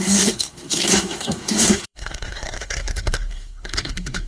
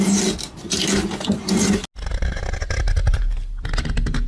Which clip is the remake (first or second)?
first